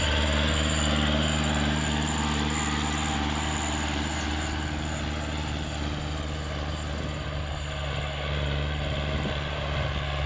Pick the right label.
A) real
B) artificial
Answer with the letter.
A